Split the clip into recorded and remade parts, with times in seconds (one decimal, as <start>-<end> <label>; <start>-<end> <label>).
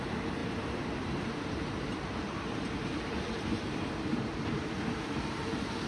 0.0-5.9 remade